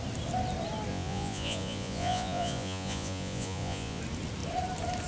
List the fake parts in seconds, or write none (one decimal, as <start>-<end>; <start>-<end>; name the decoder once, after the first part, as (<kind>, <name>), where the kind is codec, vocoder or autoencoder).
0.9-4.0 (vocoder, Vocos)